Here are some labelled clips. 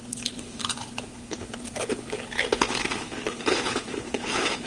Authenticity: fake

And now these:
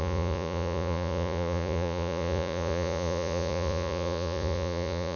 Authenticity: fake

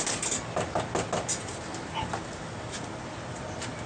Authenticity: real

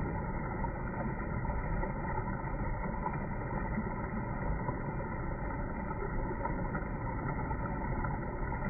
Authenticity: real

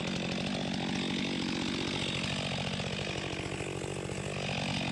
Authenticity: real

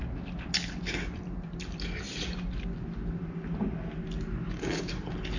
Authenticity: real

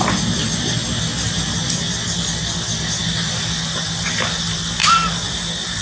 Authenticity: real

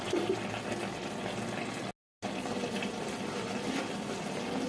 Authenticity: real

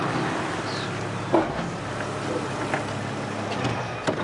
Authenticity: real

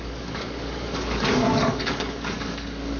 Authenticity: fake